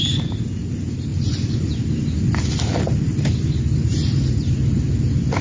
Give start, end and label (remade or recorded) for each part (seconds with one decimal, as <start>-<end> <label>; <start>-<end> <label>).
0.0-5.4 recorded